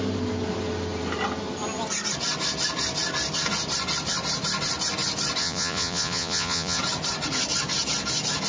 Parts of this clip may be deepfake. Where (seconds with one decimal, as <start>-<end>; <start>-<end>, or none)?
5.4-6.8